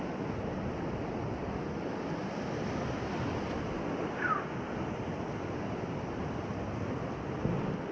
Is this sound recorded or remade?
recorded